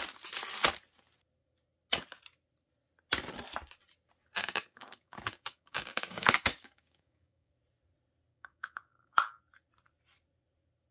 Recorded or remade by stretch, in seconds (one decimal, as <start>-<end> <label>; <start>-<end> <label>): 0.0-4.4 recorded; 4.4-7.5 remade; 7.5-8.3 recorded; 8.3-9.4 remade; 9.4-10.9 recorded